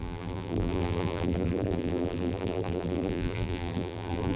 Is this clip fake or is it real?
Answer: fake